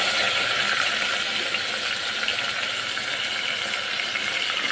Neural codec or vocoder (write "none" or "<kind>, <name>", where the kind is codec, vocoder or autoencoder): none